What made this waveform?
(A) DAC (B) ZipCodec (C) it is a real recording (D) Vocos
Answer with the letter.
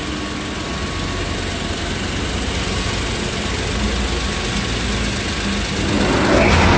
C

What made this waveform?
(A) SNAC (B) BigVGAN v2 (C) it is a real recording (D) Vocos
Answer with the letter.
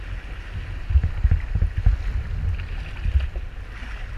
C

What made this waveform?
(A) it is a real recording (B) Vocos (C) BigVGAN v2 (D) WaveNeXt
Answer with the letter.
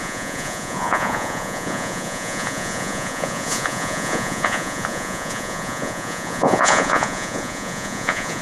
B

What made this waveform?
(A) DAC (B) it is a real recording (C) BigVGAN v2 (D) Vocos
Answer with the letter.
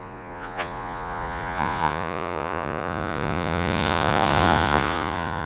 D